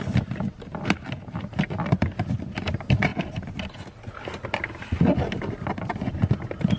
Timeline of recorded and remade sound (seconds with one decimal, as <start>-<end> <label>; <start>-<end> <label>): 0.0-6.8 recorded